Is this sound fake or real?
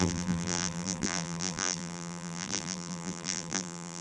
fake